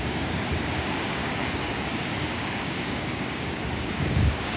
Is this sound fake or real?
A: fake